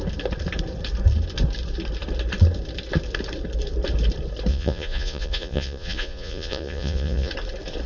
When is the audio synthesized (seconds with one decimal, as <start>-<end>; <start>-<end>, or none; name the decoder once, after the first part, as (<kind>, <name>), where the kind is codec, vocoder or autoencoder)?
4.5-7.3 (vocoder, Vocos)